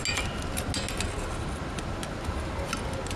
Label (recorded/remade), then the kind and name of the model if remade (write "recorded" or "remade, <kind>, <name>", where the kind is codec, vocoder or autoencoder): recorded